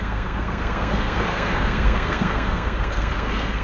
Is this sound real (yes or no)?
no